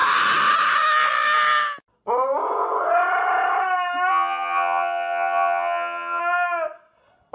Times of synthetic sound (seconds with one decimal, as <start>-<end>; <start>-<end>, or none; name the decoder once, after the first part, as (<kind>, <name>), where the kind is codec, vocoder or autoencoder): 4.1-6.2 (vocoder, HiFi-GAN)